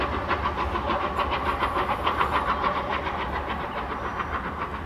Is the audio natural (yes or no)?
yes